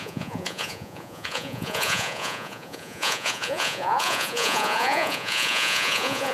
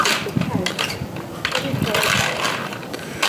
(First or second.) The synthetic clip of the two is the first